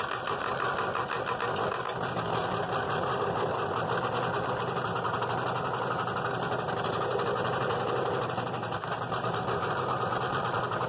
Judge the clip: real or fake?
real